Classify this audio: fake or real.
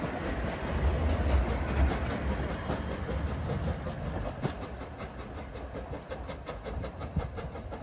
real